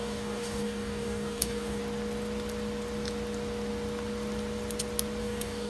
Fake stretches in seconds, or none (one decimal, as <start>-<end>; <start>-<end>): 0.0-1.8; 5.2-5.7